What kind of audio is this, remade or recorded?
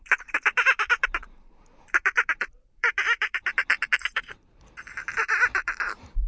remade